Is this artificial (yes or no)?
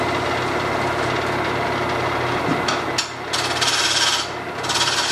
no